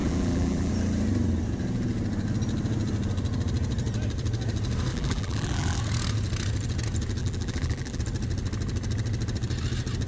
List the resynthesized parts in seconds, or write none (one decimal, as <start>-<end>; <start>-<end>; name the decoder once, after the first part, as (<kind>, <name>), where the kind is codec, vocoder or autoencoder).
0.0-0.7 (vocoder, BigVGAN v2); 4.9-5.8; 7.2-8.0